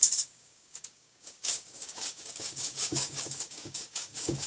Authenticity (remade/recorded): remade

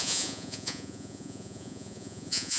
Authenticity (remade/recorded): remade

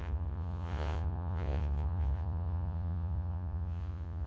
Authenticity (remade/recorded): remade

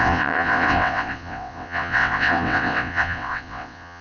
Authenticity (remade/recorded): remade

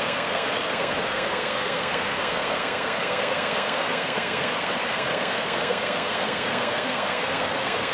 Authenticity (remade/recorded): remade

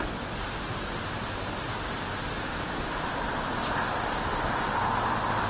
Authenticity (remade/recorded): recorded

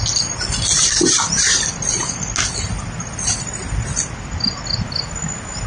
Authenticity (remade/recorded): recorded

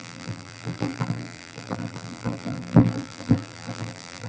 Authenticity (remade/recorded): remade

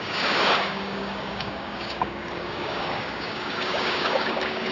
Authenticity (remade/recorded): remade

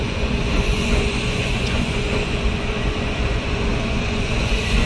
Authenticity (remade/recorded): remade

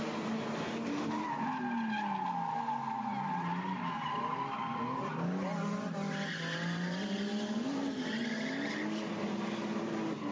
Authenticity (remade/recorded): recorded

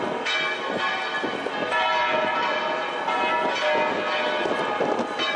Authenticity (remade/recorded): recorded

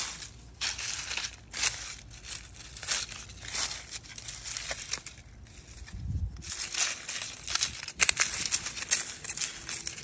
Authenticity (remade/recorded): recorded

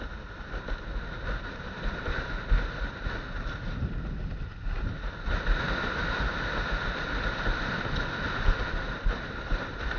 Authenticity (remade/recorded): recorded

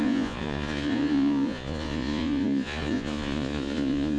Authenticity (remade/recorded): remade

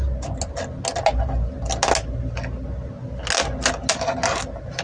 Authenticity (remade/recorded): recorded